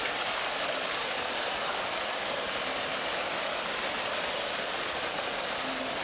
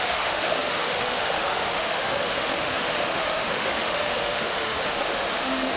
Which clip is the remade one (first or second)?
second